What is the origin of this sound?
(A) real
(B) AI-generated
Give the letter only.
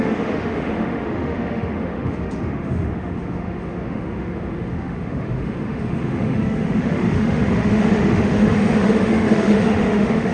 B